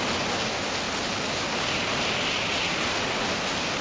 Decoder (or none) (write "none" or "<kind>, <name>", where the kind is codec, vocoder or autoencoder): none